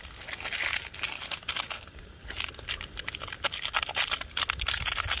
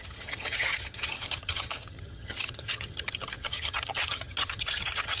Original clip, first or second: first